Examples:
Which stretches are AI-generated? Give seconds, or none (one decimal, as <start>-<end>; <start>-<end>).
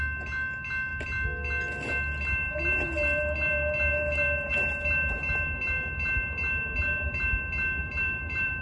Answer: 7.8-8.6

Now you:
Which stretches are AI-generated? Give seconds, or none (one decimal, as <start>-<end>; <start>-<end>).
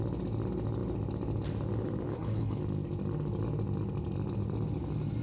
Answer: 2.1-2.6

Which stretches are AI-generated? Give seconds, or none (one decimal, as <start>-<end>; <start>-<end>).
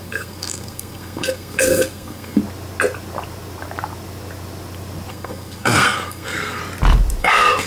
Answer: 0.0-2.4; 5.1-6.6; 7.2-7.7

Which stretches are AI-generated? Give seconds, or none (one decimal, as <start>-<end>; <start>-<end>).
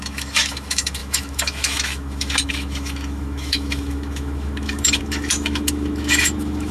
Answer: 0.0-6.7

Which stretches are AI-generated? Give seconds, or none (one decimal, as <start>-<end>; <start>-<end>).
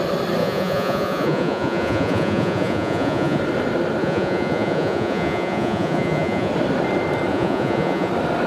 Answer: 0.4-3.4; 4.0-6.5; 7.3-8.1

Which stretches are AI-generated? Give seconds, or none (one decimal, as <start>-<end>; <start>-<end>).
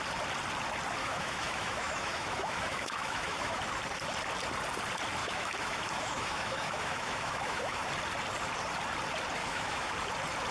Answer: 1.0-3.6; 5.2-7.9; 9.4-9.9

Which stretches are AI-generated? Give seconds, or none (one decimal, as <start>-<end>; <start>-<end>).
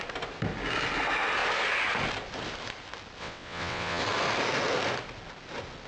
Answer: 3.2-4.0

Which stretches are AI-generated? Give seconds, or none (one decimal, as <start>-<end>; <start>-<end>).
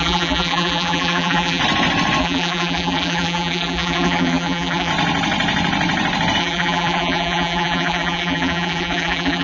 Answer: 0.0-1.6; 2.2-4.9; 6.4-9.4